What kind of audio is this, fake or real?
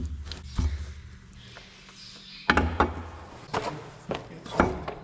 real